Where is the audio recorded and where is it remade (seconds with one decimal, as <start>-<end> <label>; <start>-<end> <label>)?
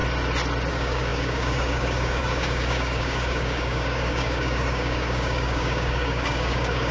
0.0-0.7 recorded; 0.7-6.9 remade